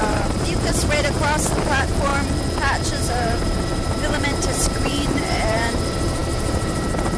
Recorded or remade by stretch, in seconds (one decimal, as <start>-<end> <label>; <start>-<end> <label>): 0.0-2.1 remade; 2.1-3.1 recorded; 3.1-7.2 remade